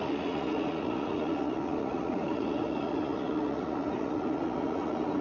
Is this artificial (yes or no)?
yes